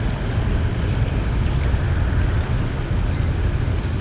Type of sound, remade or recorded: recorded